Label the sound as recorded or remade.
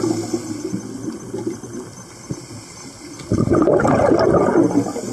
recorded